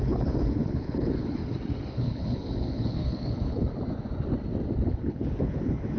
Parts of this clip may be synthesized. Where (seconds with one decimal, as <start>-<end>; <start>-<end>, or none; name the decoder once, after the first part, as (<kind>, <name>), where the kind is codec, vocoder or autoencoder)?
0.0-1.4 (codec, HILCodec); 1.9-3.7; 4.9-6.0